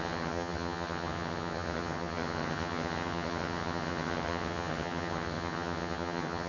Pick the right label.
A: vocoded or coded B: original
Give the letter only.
A